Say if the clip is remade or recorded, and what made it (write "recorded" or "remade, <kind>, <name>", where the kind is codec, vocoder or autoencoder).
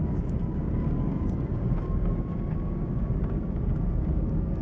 remade, codec, DAC